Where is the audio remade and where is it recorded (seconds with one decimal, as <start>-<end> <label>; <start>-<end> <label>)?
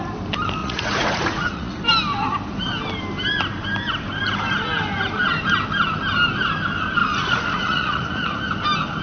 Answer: 0.0-0.6 recorded; 0.6-1.8 remade; 1.8-7.0 recorded; 7.0-8.4 remade; 8.4-9.0 recorded